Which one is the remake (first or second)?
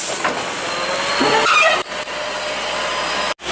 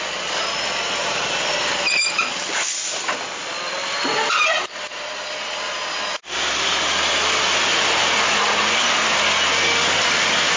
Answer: second